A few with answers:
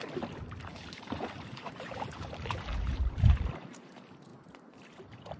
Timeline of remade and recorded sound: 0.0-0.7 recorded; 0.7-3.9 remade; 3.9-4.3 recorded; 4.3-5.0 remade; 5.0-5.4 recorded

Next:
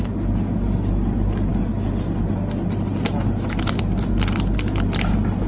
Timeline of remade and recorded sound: 0.0-5.5 recorded

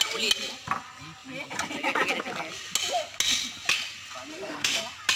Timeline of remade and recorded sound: 0.0-4.3 recorded; 4.3-4.8 remade; 4.8-5.2 recorded